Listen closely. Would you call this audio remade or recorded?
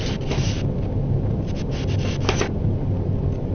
recorded